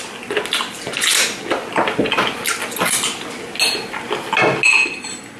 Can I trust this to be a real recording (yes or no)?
yes